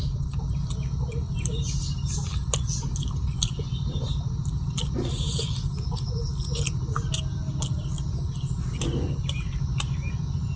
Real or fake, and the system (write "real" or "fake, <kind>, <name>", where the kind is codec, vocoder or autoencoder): real